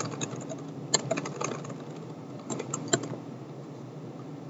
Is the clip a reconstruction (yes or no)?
no